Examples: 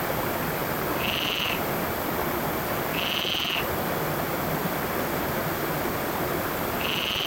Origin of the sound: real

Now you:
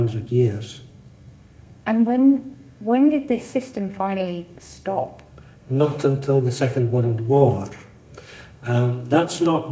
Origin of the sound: fake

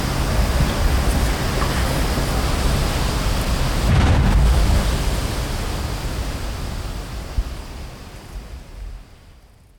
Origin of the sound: real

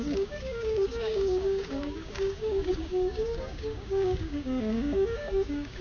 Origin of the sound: fake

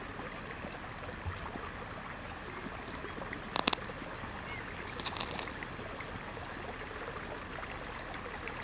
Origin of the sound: real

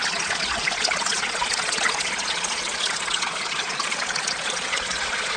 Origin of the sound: fake